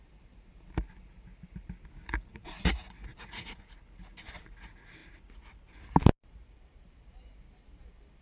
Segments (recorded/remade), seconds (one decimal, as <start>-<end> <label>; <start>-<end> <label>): 0.0-2.3 recorded; 2.3-3.7 remade; 3.7-8.2 recorded